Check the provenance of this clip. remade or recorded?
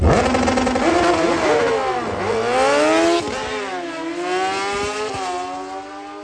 recorded